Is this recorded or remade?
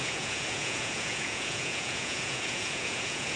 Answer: remade